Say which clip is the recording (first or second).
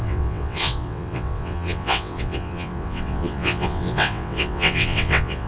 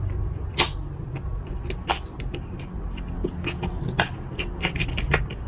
second